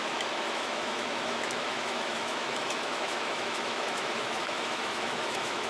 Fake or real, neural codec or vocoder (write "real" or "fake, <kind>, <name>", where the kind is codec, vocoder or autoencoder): fake, autoencoder, DAC-VAE